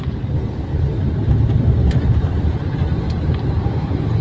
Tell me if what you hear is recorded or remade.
recorded